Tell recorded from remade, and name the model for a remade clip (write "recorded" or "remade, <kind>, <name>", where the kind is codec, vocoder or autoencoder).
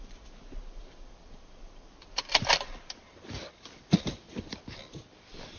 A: remade, vocoder, BigVGAN v2